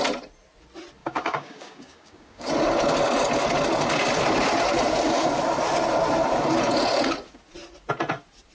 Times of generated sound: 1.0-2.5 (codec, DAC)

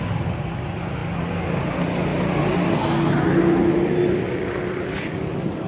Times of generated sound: none

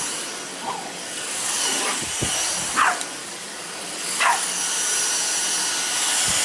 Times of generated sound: 0.5-2.1 (codec, DAC); 3.2-4.6

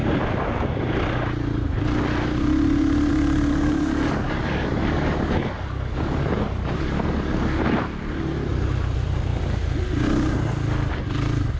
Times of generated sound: 3.5-7.6 (codec, DAC)

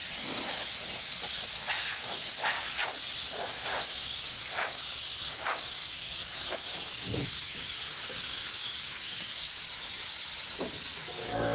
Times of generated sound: 1.9-2.9 (codec, DAC); 4.0-10.0; 10.9-11.5

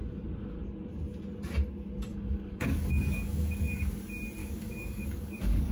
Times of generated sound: 2.1-4.0 (codec, DAC); 4.4-5.7